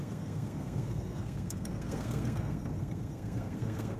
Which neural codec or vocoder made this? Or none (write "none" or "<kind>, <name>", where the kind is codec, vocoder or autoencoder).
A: codec, SNAC